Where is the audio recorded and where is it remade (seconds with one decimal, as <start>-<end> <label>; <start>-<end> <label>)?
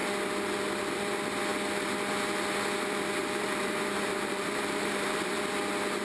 0.0-3.2 recorded; 3.2-5.4 remade; 5.4-6.0 recorded